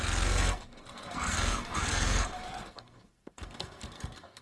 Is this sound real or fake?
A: fake